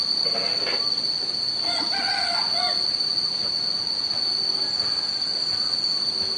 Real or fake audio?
real